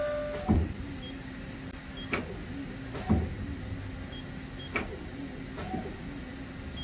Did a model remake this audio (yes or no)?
no